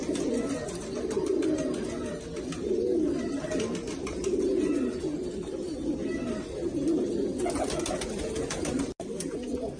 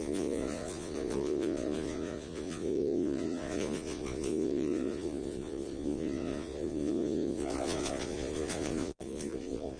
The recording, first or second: first